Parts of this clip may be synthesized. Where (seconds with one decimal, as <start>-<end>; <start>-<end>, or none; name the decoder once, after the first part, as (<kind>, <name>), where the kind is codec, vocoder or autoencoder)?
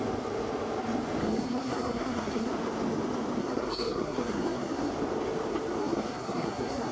1.2-2.5 (codec, SNAC); 3.4-4.9; 5.8-6.9